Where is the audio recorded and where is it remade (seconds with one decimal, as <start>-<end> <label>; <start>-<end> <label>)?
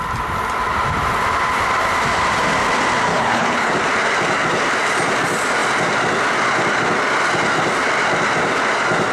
0.0-3.1 recorded; 3.1-3.7 remade; 3.7-9.1 recorded